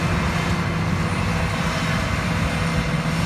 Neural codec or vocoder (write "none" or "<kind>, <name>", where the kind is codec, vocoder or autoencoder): none